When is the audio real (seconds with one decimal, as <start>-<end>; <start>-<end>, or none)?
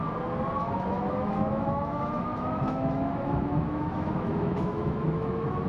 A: 0.0-0.6